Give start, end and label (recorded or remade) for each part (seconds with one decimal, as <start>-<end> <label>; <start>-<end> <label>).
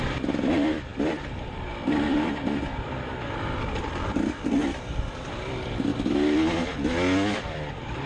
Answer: 0.0-5.9 remade; 5.9-7.4 recorded; 7.4-8.1 remade